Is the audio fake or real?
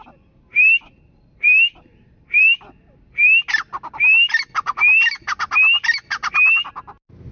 real